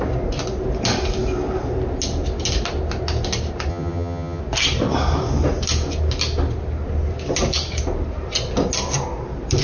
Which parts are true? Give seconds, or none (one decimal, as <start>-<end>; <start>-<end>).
0.0-3.7; 4.4-9.6